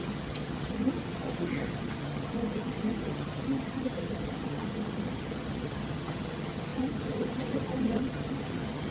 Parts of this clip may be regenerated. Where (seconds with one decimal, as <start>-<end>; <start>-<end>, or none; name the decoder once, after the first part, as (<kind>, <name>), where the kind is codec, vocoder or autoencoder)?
0.0-8.9 (vocoder, HiFi-GAN)